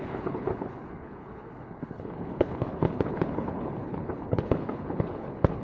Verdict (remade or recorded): remade